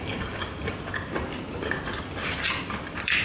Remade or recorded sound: recorded